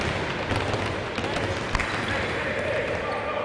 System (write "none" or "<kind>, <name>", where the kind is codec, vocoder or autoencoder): none